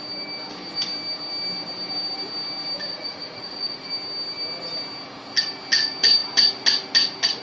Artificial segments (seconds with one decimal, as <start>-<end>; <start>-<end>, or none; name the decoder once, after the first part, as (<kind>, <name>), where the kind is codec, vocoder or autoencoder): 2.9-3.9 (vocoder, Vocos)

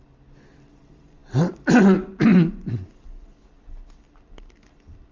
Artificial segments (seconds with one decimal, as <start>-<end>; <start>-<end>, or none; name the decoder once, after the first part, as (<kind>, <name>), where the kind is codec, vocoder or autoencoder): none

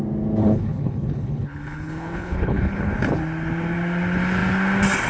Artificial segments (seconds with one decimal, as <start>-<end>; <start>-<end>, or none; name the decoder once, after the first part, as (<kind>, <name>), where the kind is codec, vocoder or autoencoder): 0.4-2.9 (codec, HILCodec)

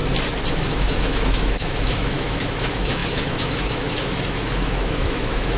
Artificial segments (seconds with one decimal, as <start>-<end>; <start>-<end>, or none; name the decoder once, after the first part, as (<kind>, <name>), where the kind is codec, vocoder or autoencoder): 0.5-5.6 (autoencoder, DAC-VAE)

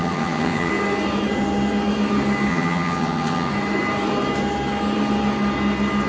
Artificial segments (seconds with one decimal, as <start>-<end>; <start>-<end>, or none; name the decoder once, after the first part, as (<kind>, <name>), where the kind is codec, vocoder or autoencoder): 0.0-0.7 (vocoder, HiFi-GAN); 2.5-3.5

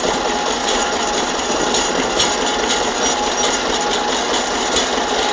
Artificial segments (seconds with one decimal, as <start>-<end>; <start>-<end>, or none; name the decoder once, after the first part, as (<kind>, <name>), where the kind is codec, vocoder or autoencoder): 0.6-1.6 (vocoder, Vocos)